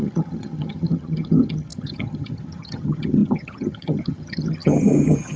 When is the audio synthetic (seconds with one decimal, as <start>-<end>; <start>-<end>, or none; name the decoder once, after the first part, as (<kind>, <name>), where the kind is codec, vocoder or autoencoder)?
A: 0.0-5.4 (vocoder, HiFi-GAN)